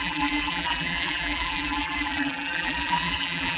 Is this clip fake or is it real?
fake